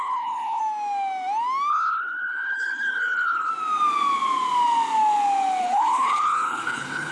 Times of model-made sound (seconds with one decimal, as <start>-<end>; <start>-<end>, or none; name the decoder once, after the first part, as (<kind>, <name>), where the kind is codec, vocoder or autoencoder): 0.0-0.6 (codec, HILCodec); 1.7-3.5; 5.6-7.1